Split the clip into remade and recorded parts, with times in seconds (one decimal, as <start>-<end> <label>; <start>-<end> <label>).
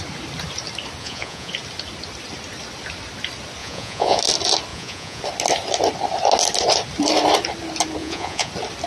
0.0-1.0 recorded; 1.0-1.5 remade; 1.5-3.6 recorded; 3.6-4.2 remade; 4.2-4.7 recorded; 4.7-5.2 remade; 5.2-8.0 recorded; 8.0-8.5 remade; 8.5-8.9 recorded